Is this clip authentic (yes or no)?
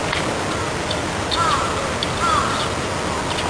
yes